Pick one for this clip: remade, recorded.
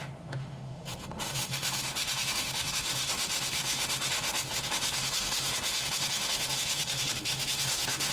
remade